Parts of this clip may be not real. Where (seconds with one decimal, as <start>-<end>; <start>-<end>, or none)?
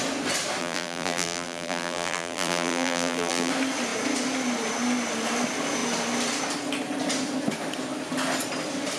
0.6-3.5